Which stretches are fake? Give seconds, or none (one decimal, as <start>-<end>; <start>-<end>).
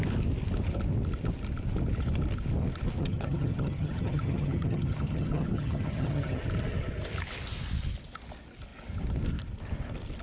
3.0-6.4